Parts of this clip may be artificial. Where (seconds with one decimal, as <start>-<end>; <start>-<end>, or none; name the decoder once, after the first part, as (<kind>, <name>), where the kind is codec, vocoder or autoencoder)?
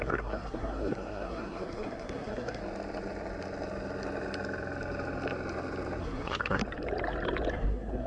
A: 0.0-2.6 (codec, SNAC); 6.0-6.6; 7.5-8.1